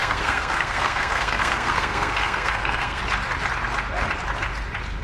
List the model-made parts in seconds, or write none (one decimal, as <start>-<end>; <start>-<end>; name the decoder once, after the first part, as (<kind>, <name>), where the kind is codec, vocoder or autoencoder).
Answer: 0.0-3.0 (codec, SNAC)